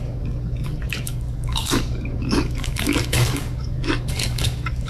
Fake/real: fake